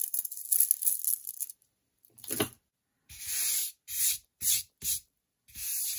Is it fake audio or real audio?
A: real